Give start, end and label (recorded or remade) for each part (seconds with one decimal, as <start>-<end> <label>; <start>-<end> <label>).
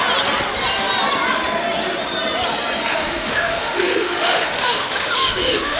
0.0-2.9 recorded; 2.9-5.8 remade